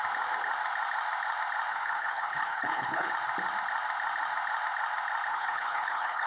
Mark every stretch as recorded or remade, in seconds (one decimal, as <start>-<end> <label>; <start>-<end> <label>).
0.0-1.7 recorded; 1.7-3.1 remade; 3.1-5.3 recorded; 5.3-6.3 remade